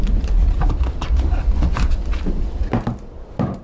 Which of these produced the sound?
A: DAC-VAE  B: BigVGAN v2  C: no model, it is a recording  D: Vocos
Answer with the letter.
C